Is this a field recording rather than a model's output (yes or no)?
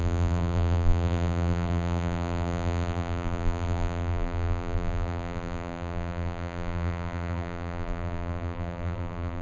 no